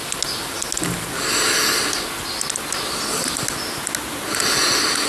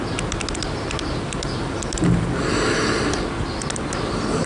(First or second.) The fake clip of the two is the second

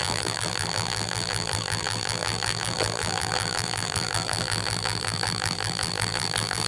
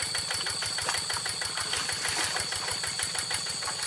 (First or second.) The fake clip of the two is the first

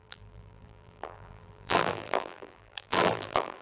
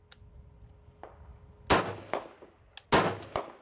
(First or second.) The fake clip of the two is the first